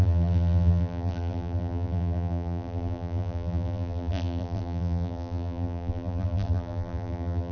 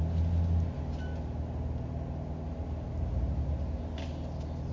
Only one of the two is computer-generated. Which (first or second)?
first